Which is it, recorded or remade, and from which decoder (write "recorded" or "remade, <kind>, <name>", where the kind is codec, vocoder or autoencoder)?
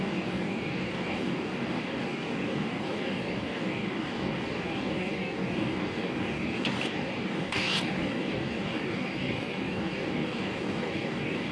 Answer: remade, codec, DAC